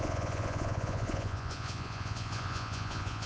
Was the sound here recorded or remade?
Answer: remade